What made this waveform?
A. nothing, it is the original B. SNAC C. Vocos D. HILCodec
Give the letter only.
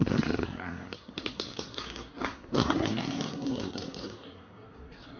B